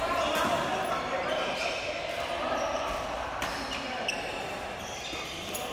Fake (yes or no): no